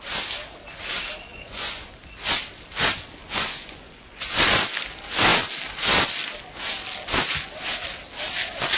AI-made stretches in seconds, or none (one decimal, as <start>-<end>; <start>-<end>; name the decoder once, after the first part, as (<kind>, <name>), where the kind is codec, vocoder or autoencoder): 1.3-1.9 (vocoder, Vocos); 3.2-4.3